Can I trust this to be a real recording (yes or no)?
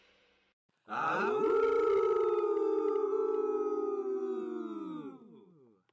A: yes